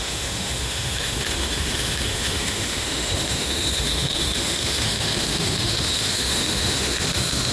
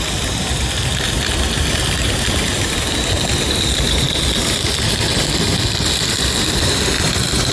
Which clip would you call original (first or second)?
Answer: second